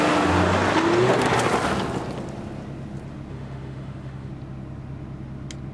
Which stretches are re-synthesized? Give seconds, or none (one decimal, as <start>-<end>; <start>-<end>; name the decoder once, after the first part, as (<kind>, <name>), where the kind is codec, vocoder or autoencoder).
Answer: 3.3-4.3 (autoencoder, DAC-VAE)